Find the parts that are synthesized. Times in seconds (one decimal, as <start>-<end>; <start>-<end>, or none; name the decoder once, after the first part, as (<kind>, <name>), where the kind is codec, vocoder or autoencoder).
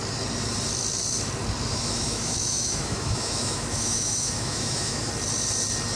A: 1.7-5.1 (autoencoder, DAC-VAE)